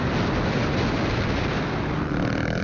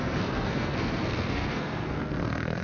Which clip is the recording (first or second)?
first